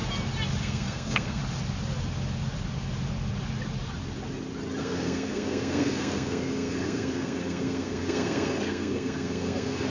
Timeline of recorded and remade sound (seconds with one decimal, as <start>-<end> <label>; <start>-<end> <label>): 0.0-0.6 recorded; 0.6-1.4 remade; 1.4-4.8 recorded; 4.8-9.9 remade